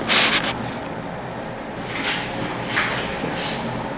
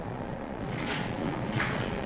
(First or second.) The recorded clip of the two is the first